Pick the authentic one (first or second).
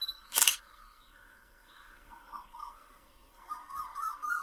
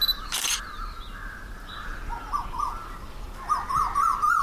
second